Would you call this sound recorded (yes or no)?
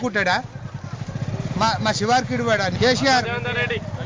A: yes